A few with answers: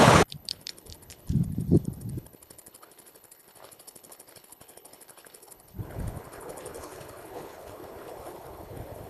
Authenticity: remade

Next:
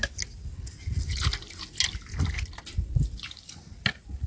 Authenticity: recorded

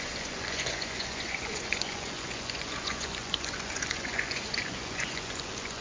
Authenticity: remade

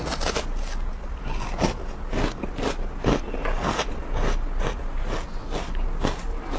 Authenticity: recorded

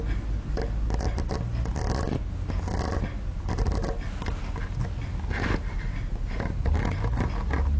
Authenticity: recorded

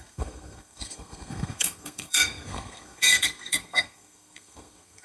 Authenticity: remade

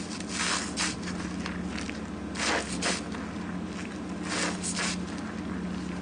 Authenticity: recorded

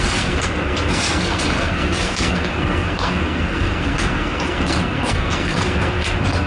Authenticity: remade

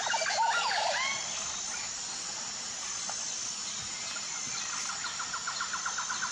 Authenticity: recorded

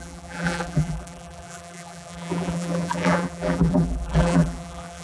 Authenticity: remade